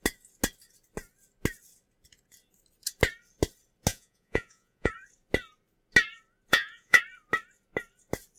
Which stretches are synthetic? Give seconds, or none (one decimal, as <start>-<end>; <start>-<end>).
3.9-4.9; 6.5-7.0